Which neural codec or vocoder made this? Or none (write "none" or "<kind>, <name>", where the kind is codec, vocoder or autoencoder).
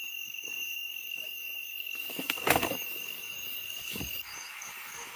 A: codec, DAC